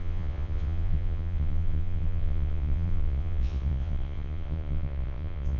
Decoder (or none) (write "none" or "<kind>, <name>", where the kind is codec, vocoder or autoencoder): vocoder, Vocos